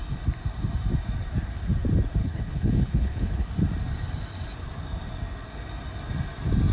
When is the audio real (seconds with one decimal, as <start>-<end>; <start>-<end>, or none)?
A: 0.0-2.2; 3.5-6.7